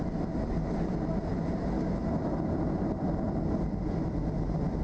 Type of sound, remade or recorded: recorded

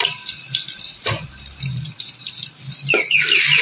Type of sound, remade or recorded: recorded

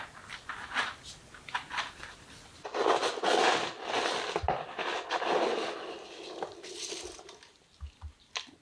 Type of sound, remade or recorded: recorded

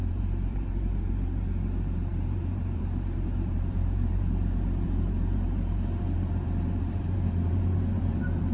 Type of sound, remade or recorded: remade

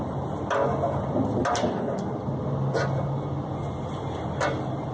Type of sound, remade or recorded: recorded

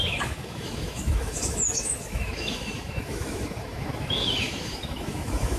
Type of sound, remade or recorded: remade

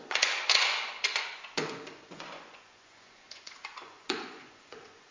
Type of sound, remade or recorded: remade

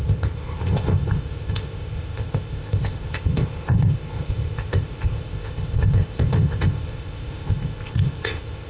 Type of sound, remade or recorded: remade